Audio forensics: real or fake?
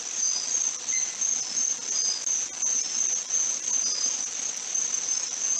real